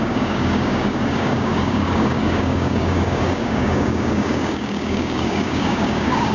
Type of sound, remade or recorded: remade